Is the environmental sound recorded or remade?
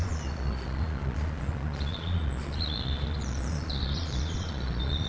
remade